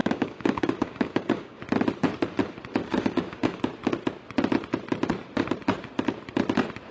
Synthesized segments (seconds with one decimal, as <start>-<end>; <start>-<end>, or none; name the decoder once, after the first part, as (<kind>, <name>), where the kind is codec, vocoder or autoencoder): 0.0-1.6 (codec, DAC); 2.8-3.6